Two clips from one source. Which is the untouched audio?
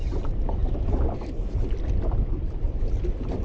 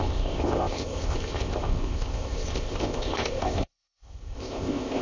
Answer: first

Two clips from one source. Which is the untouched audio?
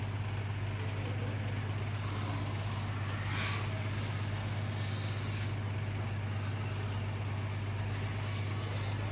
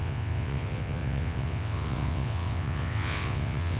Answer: first